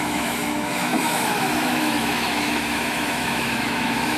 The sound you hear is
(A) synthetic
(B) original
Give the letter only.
A